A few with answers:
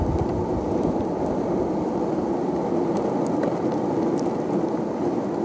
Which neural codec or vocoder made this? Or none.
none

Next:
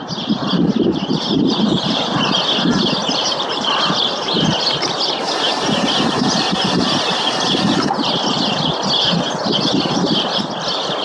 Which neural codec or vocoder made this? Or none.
none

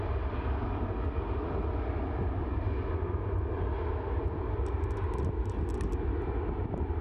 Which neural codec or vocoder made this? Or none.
none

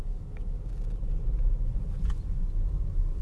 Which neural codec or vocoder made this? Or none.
none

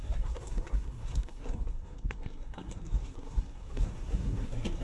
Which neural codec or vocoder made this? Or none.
codec, SNAC